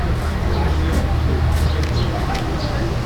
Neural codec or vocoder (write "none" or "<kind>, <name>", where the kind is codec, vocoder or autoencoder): none